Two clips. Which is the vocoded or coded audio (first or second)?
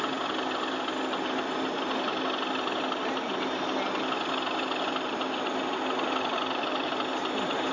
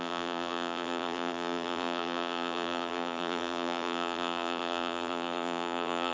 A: second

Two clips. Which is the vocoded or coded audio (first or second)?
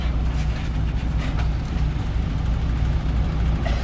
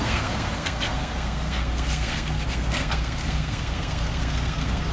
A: second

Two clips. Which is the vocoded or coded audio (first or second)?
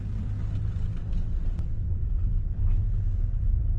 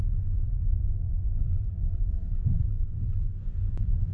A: second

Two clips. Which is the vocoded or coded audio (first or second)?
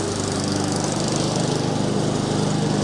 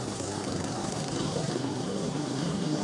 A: second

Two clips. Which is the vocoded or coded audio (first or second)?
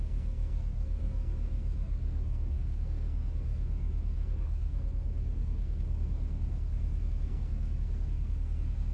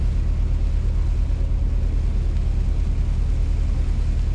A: first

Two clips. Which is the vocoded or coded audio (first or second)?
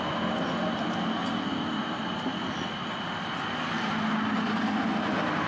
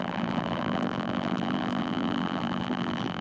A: second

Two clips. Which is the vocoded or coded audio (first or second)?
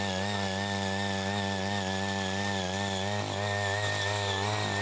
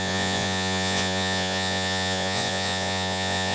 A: second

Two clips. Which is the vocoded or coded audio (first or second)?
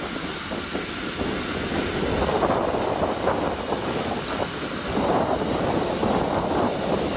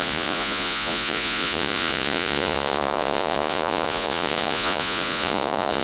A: second